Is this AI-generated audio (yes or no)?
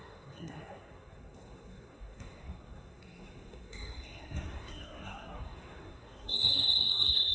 yes